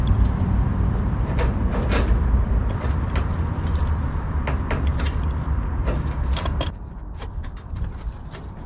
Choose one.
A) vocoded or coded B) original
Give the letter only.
A